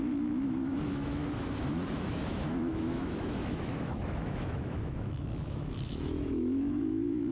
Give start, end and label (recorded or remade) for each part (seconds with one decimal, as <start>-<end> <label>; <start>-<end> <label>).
0.0-1.2 remade; 1.2-2.0 recorded; 2.0-7.3 remade

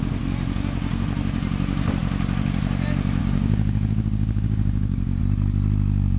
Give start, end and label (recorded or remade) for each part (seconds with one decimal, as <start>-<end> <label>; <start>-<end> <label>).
0.0-3.2 recorded; 3.2-5.2 remade; 5.2-6.2 recorded